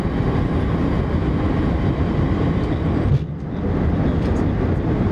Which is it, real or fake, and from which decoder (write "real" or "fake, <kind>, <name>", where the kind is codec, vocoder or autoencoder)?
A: real